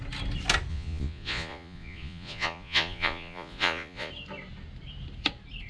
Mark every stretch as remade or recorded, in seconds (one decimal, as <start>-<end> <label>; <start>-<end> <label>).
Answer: 0.0-0.7 recorded; 0.7-4.1 remade; 4.1-5.7 recorded